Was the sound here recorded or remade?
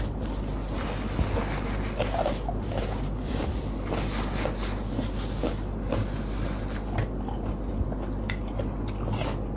recorded